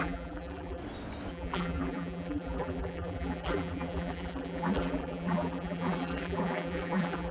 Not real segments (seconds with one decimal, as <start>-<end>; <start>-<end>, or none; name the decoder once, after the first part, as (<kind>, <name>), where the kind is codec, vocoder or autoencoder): 0.0-0.8 (vocoder, BigVGAN v2); 1.3-7.3